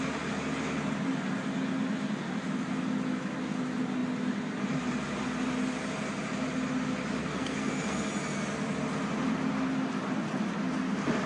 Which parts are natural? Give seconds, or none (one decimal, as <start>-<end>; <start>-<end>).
0.0-7.2; 8.1-11.3